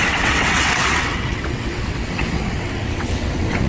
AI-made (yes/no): yes